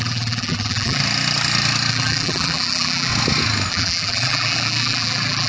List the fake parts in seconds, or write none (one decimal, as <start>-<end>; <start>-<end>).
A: 0.0-1.0; 1.9-3.1; 3.7-5.5